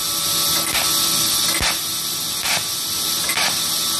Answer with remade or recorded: recorded